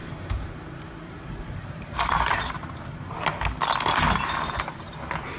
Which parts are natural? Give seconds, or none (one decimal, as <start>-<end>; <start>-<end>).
3.2-5.4